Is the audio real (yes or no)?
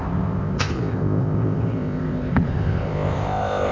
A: no